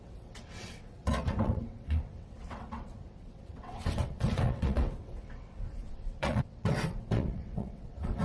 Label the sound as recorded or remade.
remade